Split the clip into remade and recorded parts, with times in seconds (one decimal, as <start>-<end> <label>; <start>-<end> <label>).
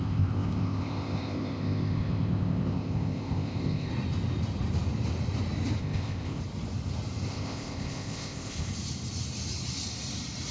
0.0-3.9 remade; 3.9-5.8 recorded; 5.8-6.4 remade; 6.4-7.3 recorded; 7.3-8.7 remade; 8.7-10.5 recorded